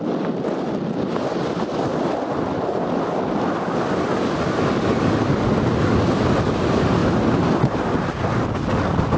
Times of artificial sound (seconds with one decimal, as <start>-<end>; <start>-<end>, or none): none